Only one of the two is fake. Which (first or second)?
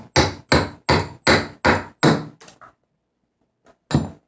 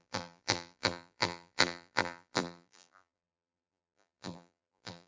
second